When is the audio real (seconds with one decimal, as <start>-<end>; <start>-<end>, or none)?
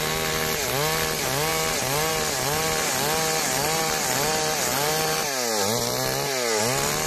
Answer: 0.0-7.1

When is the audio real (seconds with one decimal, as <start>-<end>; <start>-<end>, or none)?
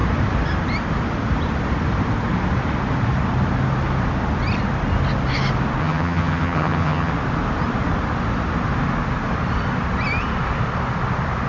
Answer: 0.0-5.8; 7.1-11.5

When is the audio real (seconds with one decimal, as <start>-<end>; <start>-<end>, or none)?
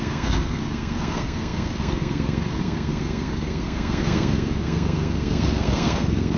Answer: none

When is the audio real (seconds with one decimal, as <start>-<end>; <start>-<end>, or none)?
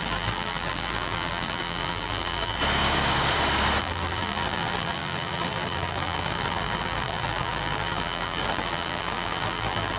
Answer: 2.6-3.8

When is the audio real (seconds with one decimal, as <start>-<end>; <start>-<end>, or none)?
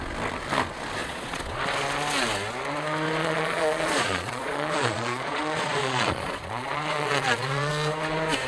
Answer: 0.0-1.0; 1.6-3.2; 7.7-8.5